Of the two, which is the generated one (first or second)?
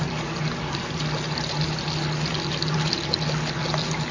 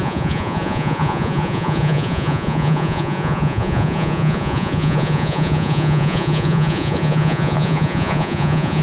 second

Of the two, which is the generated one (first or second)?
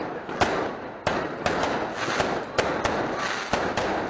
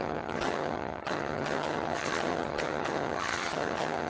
second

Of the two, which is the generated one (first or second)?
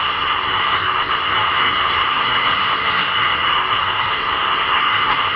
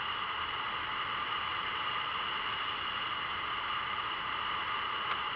first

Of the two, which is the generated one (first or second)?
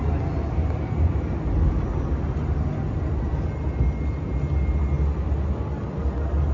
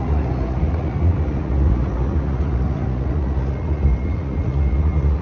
second